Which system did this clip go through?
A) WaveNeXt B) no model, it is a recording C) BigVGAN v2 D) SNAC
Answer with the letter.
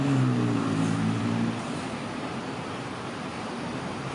C